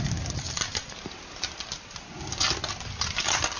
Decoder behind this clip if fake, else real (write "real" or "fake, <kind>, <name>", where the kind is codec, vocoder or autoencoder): real